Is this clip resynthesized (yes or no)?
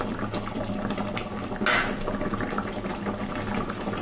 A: no